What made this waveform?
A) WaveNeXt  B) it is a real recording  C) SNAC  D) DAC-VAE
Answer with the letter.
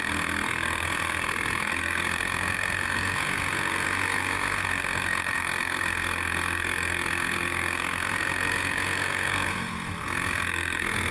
C